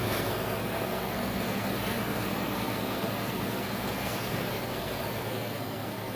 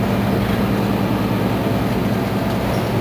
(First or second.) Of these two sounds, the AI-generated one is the first